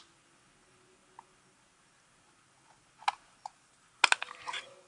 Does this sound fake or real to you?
real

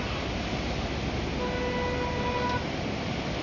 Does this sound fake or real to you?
real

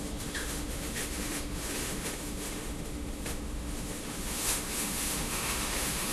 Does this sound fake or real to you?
fake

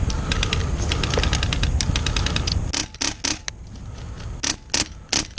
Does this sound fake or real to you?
real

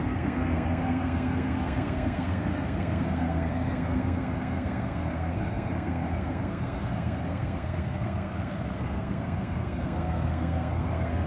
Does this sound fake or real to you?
fake